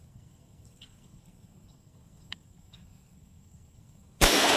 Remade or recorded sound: remade